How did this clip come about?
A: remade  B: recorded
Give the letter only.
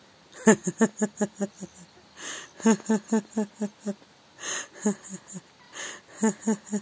B